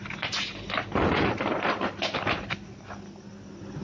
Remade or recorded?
recorded